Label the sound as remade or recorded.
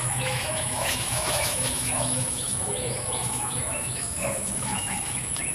remade